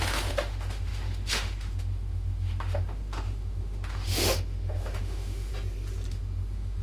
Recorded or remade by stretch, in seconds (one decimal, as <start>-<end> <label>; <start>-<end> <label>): 0.0-5.5 remade; 5.5-6.1 recorded; 6.1-6.8 remade